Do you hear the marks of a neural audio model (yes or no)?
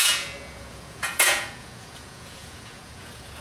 yes